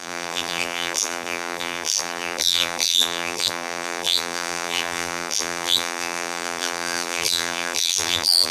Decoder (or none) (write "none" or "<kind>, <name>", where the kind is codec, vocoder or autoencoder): vocoder, BigVGAN v2